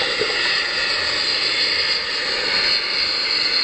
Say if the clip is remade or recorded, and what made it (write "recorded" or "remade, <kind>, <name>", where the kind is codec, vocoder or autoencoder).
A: recorded